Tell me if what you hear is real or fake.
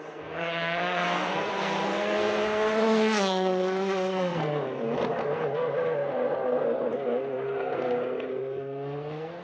fake